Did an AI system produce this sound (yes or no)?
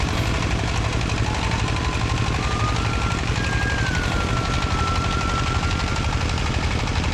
no